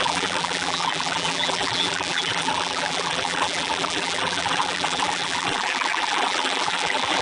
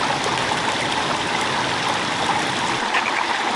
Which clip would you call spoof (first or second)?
first